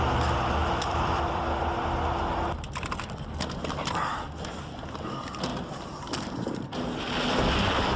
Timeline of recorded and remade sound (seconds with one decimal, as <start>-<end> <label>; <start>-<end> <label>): 0.0-0.6 recorded; 0.6-1.6 remade; 1.6-8.0 recorded